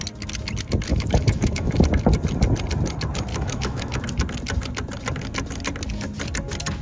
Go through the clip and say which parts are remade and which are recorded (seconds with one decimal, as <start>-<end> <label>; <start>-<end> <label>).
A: 0.0-0.9 recorded; 0.9-1.8 remade; 1.8-3.3 recorded; 3.3-4.1 remade; 4.1-6.8 recorded